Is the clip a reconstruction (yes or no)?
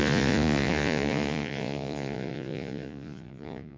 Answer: yes